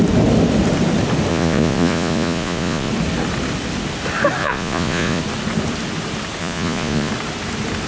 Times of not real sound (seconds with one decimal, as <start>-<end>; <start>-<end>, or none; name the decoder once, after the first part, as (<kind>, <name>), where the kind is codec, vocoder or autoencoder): 1.3-2.9 (vocoder, Vocos); 4.4-5.2; 6.4-7.1